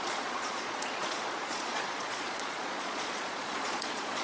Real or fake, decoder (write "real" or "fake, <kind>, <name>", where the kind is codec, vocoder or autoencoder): fake, vocoder, Vocos